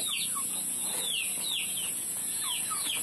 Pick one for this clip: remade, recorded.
remade